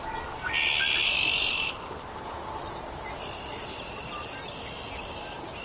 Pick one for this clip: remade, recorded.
recorded